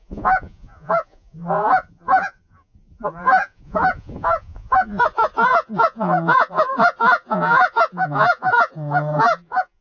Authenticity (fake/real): fake